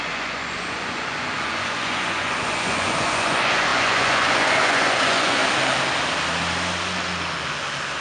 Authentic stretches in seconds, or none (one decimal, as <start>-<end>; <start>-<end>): 5.4-8.0